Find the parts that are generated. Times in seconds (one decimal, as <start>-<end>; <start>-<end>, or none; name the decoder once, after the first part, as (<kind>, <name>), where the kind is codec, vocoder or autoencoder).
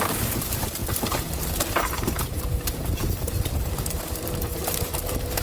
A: 0.0-5.4 (vocoder, BigVGAN v2)